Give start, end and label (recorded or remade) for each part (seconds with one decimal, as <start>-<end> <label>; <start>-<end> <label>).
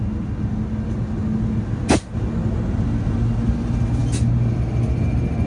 0.0-5.5 recorded